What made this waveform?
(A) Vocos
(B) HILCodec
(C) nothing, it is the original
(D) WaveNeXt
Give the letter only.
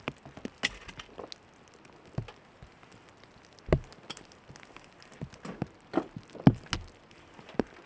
C